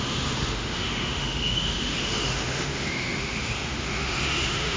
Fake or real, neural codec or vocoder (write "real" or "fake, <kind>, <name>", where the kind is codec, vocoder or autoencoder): fake, autoencoder, DAC-VAE